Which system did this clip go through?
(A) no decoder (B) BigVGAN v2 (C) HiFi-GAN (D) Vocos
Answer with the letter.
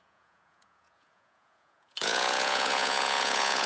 D